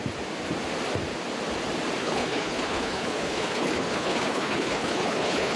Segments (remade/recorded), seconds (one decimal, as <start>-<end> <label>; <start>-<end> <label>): 0.0-2.0 recorded; 2.0-5.6 remade